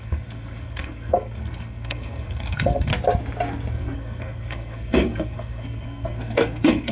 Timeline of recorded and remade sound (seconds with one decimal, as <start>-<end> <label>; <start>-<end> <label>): 0.0-2.9 remade; 2.9-3.7 recorded; 3.7-6.9 remade